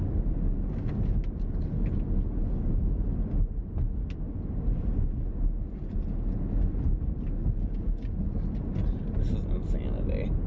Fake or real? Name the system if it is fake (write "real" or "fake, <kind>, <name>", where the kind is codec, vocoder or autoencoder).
real